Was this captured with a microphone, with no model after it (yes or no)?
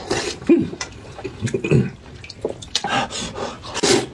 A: yes